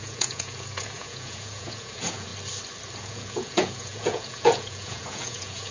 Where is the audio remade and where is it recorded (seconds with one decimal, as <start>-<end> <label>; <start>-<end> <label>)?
0.0-2.3 remade; 2.3-3.0 recorded; 3.0-5.7 remade